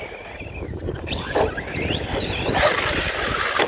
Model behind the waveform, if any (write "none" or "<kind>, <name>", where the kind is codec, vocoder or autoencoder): none